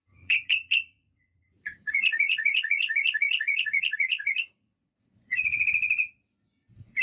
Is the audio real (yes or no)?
no